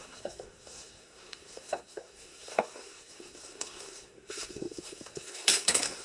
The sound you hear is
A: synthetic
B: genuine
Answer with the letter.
A